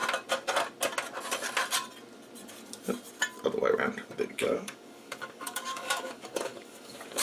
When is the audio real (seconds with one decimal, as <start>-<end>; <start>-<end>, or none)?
0.0-4.3